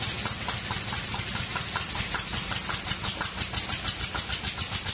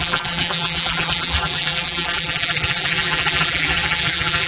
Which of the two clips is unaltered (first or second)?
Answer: first